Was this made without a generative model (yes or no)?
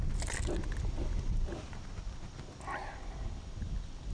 yes